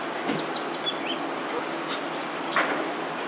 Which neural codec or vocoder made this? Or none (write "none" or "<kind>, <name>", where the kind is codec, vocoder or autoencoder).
none